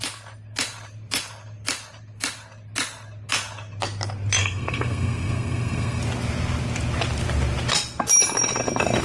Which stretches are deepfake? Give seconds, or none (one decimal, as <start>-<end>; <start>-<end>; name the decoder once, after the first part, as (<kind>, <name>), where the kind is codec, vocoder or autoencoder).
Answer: 4.4-6.0 (codec, SNAC)